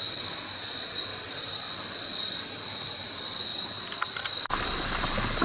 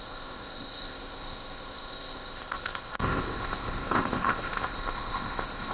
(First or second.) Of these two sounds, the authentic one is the first